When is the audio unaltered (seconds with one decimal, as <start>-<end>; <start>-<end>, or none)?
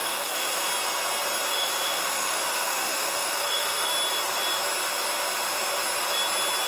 0.7-1.5; 3.9-6.7